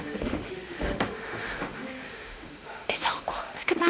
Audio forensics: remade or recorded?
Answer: remade